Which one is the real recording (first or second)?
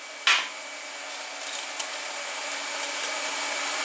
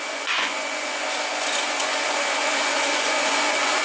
first